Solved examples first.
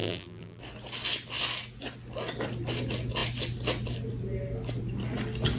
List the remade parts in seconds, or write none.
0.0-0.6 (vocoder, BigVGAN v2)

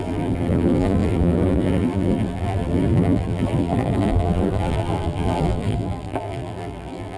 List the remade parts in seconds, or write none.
0.0-7.2 (vocoder, BigVGAN v2)

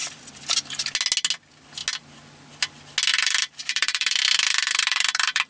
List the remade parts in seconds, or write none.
0.0-0.9 (vocoder, BigVGAN v2); 3.1-5.5

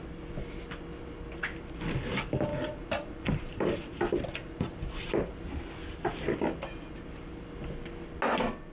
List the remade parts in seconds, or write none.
2.5-4.5 (vocoder, BigVGAN v2)

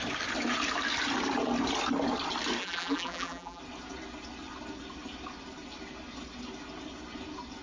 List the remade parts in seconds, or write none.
2.6-3.6 (vocoder, BigVGAN v2)